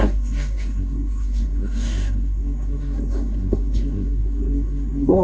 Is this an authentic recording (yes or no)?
no